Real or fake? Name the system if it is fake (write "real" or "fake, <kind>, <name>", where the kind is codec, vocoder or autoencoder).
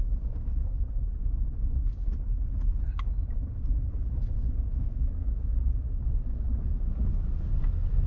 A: real